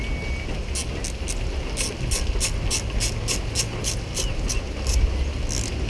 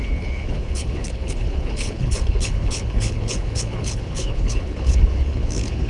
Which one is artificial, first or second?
second